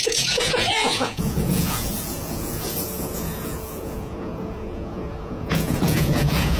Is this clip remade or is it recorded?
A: remade